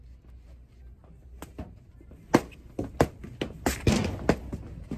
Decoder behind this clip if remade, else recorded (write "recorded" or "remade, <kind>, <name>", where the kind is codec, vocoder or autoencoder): recorded